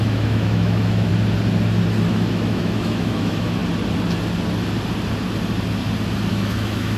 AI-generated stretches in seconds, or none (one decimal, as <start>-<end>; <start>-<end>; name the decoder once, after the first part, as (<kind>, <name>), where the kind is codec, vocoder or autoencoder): 0.0-1.1 (autoencoder, DAC-VAE); 2.1-3.6; 6.3-7.0